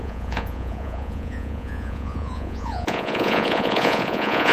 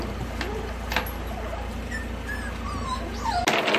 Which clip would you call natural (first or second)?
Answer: second